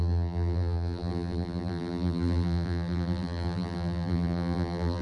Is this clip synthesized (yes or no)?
yes